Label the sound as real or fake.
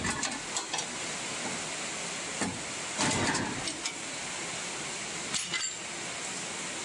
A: real